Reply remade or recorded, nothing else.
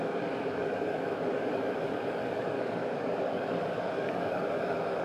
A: remade